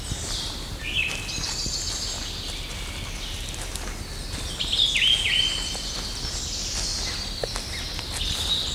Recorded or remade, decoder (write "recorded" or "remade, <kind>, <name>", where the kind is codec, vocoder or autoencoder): recorded